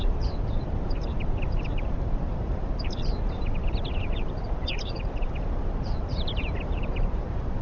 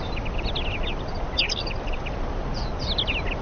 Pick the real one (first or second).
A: second